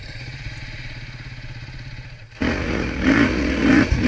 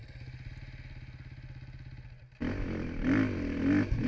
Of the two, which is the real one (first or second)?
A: second